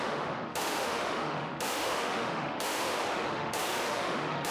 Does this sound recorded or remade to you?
remade